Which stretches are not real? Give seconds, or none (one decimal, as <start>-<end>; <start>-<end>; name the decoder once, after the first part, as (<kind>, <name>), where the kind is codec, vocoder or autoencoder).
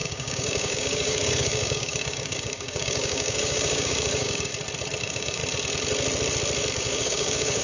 0.0-4.5 (codec, DAC); 5.0-5.4; 6.7-7.6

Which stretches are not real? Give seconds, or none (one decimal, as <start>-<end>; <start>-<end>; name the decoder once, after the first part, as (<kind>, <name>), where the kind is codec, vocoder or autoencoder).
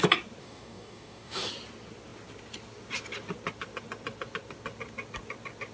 0.4-1.5 (codec, DAC)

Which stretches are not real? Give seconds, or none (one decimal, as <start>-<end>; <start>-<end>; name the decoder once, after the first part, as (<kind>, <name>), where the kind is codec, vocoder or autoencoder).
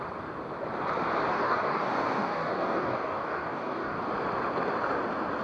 1.3-4.1 (codec, DAC)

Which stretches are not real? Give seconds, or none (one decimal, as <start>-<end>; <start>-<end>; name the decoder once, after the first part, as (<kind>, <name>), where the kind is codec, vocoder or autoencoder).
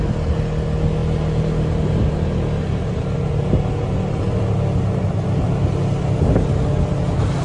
none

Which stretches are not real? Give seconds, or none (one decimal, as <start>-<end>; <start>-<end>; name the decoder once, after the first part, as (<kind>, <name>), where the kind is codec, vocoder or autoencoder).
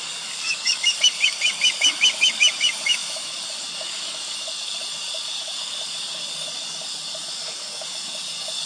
0.0-8.7 (codec, DAC)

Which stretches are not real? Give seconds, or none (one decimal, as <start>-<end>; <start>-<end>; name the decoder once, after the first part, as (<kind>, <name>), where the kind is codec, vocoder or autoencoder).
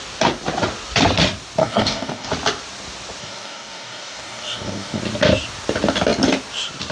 1.6-2.3 (codec, DAC); 3.2-5.0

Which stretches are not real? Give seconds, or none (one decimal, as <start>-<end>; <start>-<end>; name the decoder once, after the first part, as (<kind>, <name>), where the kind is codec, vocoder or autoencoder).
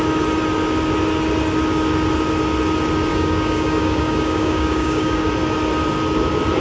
3.1-5.3 (codec, DAC)